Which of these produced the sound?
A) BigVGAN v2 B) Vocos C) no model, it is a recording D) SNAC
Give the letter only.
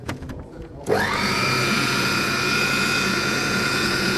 B